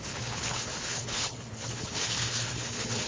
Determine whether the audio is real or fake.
fake